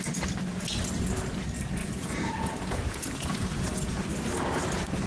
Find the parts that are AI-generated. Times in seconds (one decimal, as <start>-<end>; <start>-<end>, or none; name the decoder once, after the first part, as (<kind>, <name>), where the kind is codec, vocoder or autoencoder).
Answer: 1.8-4.0 (vocoder, Vocos)